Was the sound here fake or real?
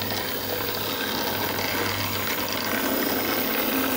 real